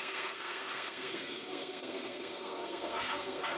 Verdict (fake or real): fake